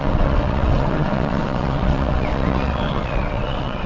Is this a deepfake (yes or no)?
yes